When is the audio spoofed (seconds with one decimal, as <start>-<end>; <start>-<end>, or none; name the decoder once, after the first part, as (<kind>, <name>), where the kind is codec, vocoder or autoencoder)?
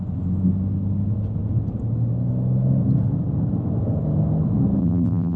4.8-5.4 (vocoder, BigVGAN v2)